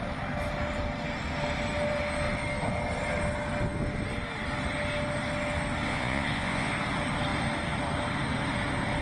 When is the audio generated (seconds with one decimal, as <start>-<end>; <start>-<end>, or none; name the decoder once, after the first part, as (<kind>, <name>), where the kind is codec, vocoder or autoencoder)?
5.9-6.7 (vocoder, Vocos)